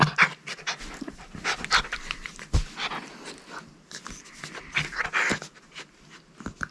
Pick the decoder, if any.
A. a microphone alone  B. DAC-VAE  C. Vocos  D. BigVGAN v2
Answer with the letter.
A